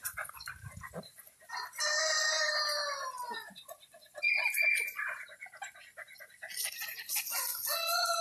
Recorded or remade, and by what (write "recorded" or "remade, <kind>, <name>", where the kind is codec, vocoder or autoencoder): recorded